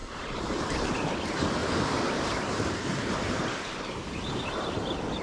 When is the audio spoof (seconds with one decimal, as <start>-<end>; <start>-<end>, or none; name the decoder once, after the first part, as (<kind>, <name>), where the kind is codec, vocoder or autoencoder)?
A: 0.0-0.9 (vocoder, BigVGAN v2); 1.6-4.7